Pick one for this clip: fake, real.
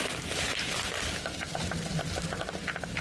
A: real